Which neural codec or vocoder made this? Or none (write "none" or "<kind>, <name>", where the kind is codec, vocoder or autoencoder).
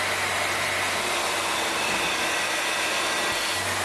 none